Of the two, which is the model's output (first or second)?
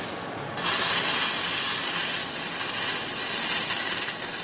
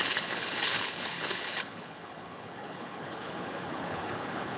second